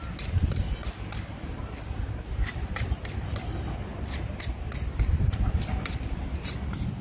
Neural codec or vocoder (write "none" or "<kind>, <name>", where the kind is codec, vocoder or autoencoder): none